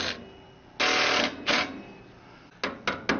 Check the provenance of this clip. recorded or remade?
recorded